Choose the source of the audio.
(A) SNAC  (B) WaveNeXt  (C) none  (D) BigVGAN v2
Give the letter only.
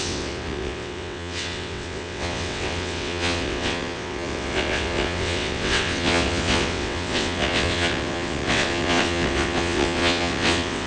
B